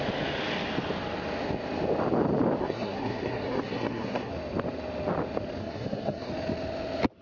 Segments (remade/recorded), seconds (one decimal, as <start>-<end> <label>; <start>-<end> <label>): 0.0-2.6 recorded; 2.6-4.3 remade; 4.3-5.6 recorded; 5.6-6.3 remade; 6.3-7.2 recorded